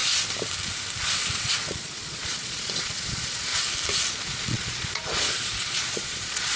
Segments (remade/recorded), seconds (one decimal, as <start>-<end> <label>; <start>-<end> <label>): 0.0-1.0 recorded; 1.0-3.5 remade; 3.5-4.2 recorded; 4.2-6.6 remade